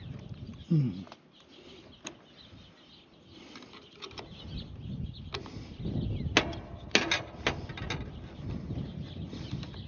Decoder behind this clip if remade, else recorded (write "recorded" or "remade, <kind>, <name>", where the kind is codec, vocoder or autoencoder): recorded